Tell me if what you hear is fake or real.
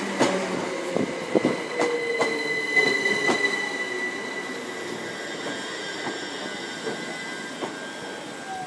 real